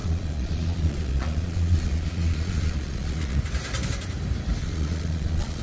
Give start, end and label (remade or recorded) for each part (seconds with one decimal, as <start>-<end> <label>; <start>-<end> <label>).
0.0-3.4 remade; 3.4-4.6 recorded; 4.6-5.6 remade